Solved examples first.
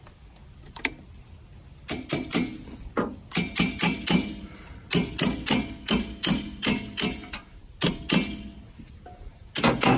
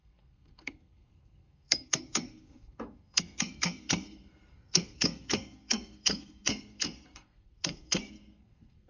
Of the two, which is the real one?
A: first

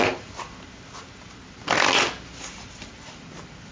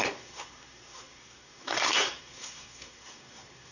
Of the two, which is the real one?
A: first